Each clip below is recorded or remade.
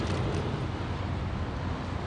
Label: recorded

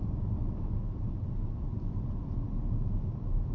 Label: recorded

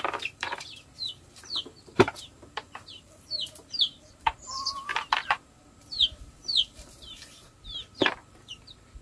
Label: remade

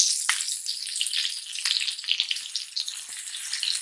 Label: recorded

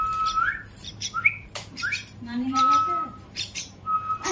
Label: remade